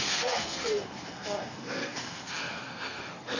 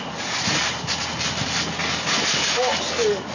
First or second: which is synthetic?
first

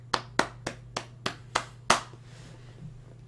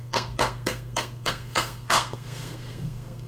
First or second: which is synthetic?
second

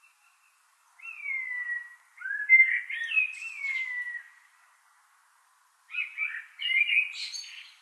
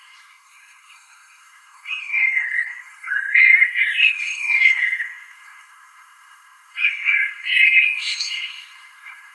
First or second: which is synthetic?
second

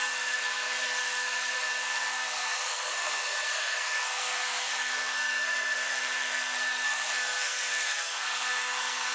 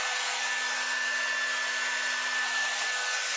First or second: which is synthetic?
first